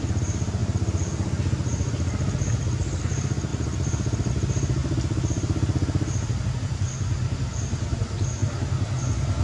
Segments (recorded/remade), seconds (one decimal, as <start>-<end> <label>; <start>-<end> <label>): 0.0-3.5 recorded; 3.5-4.3 remade; 4.3-4.8 recorded; 4.8-8.0 remade; 8.0-9.4 recorded

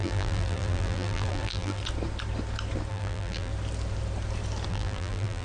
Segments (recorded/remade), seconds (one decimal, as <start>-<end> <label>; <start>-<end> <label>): 0.0-1.8 remade; 1.8-2.9 recorded; 2.9-3.5 remade; 3.5-4.7 recorded; 4.7-5.4 remade

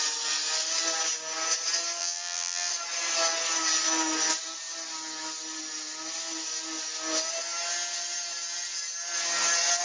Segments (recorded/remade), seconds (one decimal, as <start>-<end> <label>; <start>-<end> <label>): 0.0-2.0 recorded; 2.0-2.7 remade; 2.7-9.8 recorded

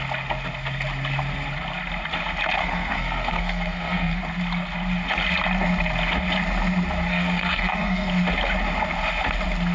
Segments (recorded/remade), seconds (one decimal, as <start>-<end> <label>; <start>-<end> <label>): 0.0-2.6 recorded; 2.6-4.2 remade; 4.2-7.1 recorded; 7.1-8.1 remade; 8.1-9.7 recorded

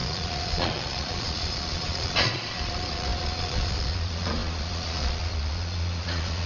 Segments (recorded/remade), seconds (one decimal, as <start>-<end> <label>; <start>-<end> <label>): 0.0-6.5 remade

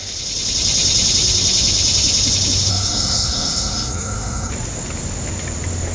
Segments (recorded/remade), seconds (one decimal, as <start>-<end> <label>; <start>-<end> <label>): 0.0-2.7 recorded; 2.7-4.5 remade; 4.5-5.9 recorded